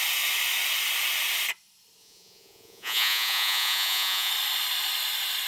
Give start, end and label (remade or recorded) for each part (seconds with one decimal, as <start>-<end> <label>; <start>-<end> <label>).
0.0-2.0 recorded; 2.0-4.3 remade; 4.3-5.5 recorded